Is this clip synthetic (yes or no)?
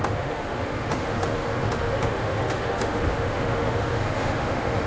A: yes